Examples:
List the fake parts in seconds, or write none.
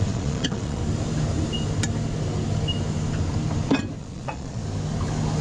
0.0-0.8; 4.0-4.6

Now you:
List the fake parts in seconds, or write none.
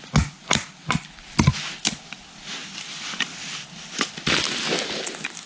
none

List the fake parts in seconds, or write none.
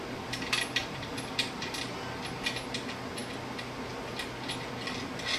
0.8-1.7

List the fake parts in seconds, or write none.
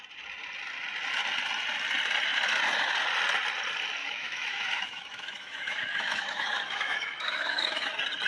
4.0-7.9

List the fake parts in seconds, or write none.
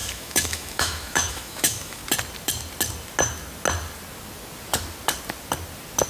0.0-2.0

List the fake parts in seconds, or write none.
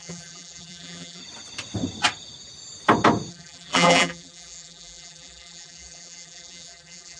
0.0-1.2; 3.3-7.2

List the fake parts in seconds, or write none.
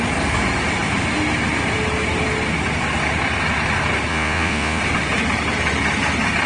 4.1-4.8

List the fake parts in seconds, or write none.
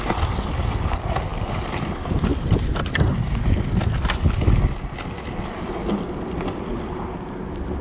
none